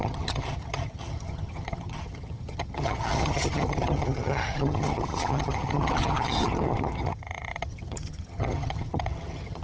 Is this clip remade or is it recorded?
remade